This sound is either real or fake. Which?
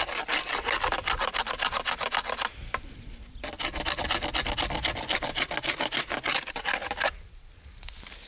real